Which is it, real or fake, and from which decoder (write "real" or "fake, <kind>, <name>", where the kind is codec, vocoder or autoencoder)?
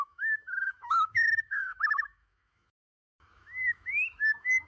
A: fake, autoencoder, DAC-VAE